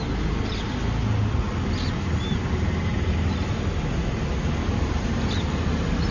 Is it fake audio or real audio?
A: real